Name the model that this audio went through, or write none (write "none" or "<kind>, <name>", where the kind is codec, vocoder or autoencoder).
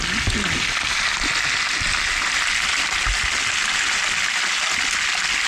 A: none